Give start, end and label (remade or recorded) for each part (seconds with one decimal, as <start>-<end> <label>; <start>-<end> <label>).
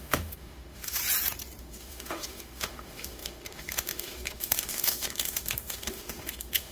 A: 0.0-1.0 remade; 1.0-1.6 recorded; 1.6-6.7 remade